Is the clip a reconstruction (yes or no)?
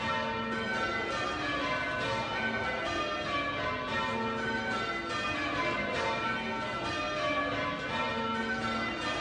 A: no